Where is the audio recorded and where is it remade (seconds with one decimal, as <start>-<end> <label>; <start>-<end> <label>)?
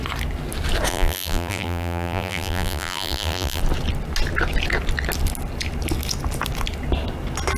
0.0-0.9 recorded; 0.9-3.6 remade; 3.6-7.6 recorded